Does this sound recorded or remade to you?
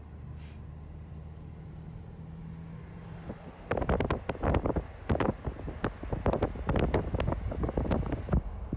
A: recorded